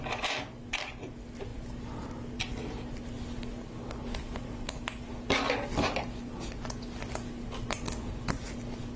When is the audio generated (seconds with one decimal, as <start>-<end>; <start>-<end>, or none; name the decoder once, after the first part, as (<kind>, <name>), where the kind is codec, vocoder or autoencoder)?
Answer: none